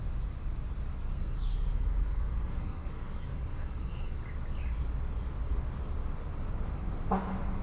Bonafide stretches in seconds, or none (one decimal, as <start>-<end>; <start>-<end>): 0.0-1.1; 4.2-7.6